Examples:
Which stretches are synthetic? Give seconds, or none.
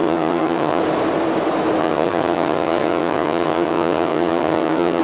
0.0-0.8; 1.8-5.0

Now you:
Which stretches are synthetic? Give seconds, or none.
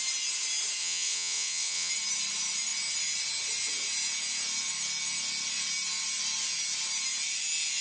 0.8-1.9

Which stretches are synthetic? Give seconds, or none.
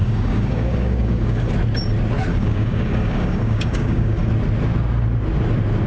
0.0-1.5; 2.3-4.3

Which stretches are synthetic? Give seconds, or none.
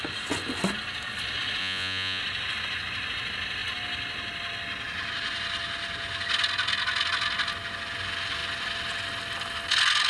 1.6-2.2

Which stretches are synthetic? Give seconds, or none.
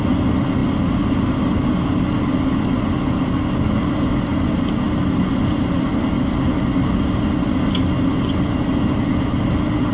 none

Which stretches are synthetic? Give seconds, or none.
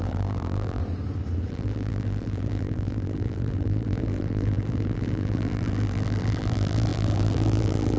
0.0-0.8; 1.5-8.0